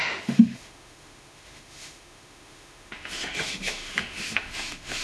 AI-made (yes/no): yes